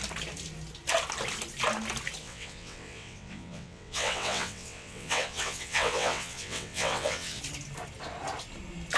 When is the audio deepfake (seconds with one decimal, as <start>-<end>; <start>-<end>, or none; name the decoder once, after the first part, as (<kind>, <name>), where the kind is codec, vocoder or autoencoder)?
2.2-7.4 (vocoder, WaveNeXt)